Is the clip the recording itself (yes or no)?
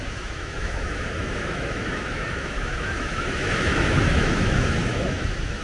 no